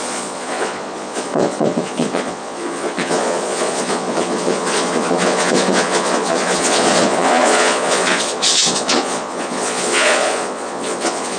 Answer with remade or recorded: remade